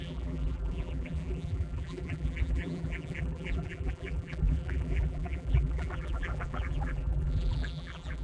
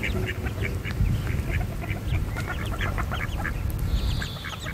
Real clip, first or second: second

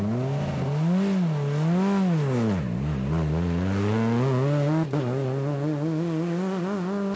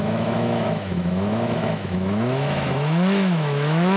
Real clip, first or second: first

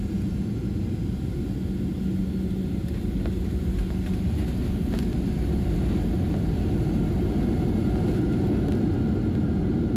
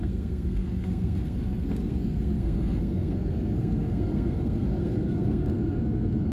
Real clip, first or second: first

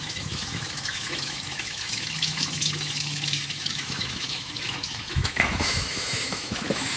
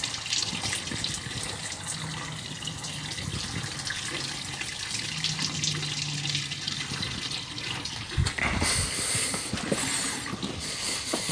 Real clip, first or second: second